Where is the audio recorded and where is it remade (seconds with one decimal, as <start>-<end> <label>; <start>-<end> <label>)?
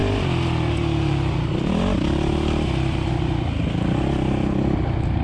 0.0-5.2 recorded